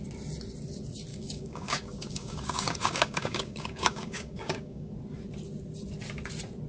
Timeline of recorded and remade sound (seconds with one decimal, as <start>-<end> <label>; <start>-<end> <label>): 0.0-1.1 recorded; 1.1-4.9 remade; 4.9-6.7 recorded